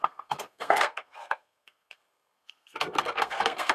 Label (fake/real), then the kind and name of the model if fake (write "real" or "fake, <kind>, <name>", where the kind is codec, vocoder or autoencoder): fake, codec, SNAC